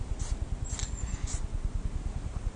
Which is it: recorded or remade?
recorded